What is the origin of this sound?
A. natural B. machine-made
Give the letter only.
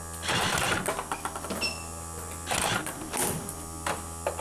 A